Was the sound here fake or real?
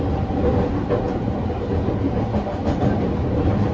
real